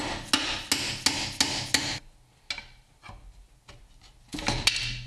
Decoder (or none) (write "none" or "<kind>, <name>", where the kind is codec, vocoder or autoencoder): none